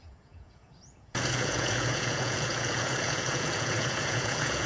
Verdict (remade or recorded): remade